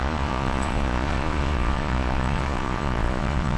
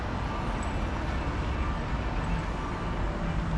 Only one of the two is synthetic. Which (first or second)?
first